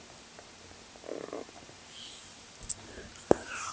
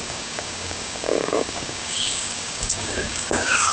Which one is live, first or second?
first